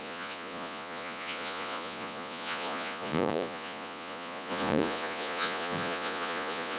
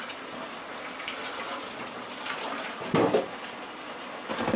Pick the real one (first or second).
second